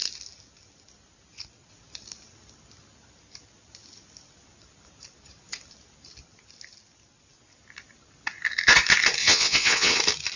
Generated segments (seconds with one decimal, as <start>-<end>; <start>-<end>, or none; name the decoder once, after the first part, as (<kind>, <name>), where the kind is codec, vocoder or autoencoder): 9.2-10.0 (vocoder, WaveNeXt)